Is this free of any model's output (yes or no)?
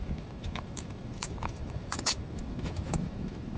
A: no